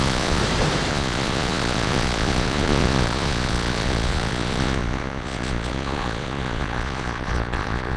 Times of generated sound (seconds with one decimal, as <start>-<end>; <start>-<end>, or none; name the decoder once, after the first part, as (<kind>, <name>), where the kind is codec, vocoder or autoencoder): 0.0-0.4 (vocoder, Vocos); 0.9-8.0